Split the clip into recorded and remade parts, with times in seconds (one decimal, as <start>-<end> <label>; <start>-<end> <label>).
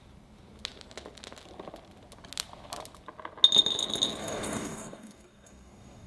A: 0.0-4.2 recorded; 4.2-6.1 remade